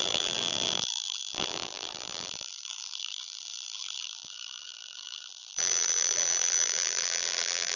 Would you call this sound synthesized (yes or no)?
yes